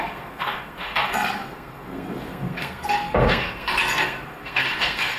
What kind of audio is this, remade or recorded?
remade